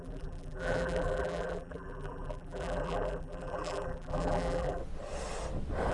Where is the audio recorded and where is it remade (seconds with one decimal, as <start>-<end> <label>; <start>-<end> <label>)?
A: 0.0-4.8 remade; 4.8-5.9 recorded